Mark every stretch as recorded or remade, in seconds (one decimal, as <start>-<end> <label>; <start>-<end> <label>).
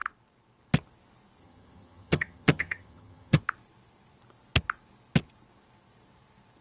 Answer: 0.0-1.4 recorded; 1.4-3.4 remade; 3.4-6.6 recorded